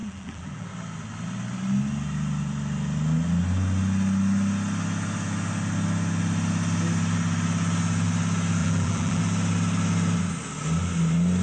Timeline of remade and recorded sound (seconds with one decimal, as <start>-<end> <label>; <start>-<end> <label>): 0.0-0.7 remade; 0.7-8.6 recorded; 8.6-9.2 remade; 9.2-11.4 recorded